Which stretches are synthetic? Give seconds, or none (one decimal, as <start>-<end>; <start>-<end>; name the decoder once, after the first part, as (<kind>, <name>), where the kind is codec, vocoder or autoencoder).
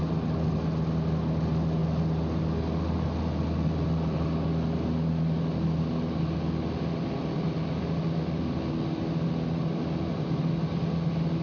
none